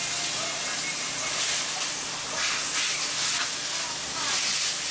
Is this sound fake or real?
real